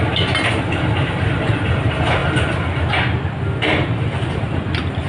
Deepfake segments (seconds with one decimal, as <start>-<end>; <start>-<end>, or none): none

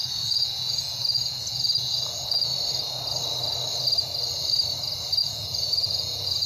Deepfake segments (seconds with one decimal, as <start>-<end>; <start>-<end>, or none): 0.0-2.5; 5.2-6.5

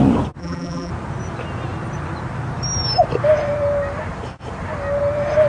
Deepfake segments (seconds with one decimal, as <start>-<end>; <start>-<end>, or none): 0.4-0.9

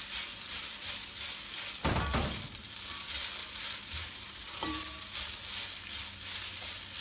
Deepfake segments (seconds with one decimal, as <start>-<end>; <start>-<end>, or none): 3.4-5.1

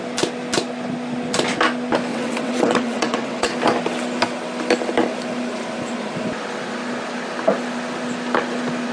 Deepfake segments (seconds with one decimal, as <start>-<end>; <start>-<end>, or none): 2.1-3.5